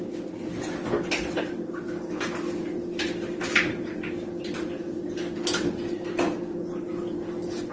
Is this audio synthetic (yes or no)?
no